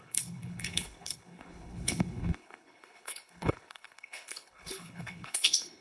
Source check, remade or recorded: remade